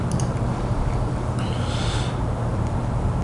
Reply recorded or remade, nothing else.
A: remade